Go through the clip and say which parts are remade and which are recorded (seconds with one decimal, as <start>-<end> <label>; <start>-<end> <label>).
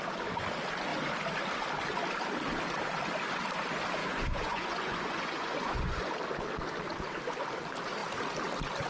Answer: 0.0-4.0 recorded; 4.0-6.0 remade; 6.0-8.9 recorded